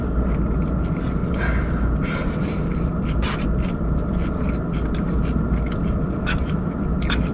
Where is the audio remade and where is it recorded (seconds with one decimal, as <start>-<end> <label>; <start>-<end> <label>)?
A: 0.0-7.3 recorded